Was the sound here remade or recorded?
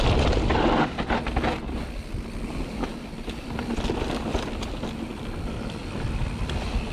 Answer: recorded